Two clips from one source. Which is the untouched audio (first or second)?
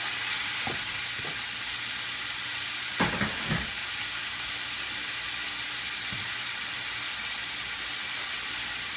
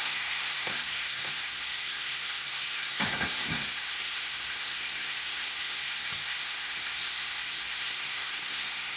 first